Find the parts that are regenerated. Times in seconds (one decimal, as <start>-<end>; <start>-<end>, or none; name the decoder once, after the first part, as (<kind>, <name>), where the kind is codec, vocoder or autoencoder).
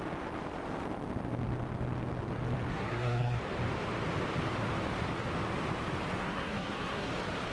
2.7-3.4 (codec, SNAC); 6.2-7.1